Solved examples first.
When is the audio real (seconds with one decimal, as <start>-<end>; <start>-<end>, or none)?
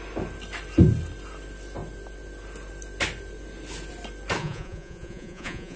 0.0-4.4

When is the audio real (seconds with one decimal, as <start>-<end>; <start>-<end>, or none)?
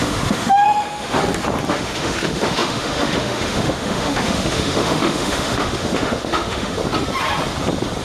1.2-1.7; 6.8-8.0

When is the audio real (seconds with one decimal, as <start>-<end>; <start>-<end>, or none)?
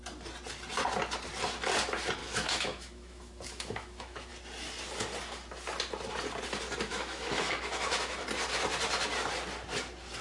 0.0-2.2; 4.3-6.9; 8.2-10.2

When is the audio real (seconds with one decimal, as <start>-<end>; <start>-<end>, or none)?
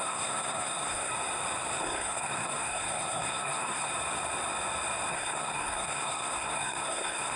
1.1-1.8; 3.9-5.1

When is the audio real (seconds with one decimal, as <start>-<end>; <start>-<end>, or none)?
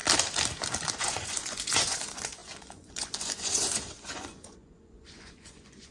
0.0-1.0